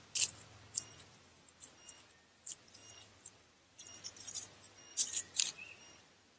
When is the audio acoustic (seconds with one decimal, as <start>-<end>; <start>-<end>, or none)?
0.0-4.9; 5.8-6.4

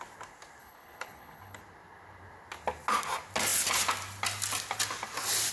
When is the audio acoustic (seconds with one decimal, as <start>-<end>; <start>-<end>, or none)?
0.0-0.6; 1.6-5.5

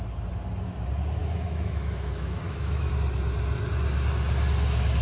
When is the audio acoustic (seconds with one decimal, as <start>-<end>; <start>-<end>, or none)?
0.0-1.2; 2.9-5.0